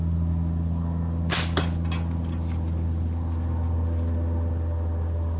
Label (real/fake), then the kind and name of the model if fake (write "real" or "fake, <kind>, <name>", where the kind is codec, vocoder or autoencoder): real